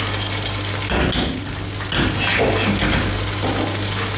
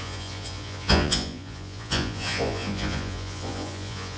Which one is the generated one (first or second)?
second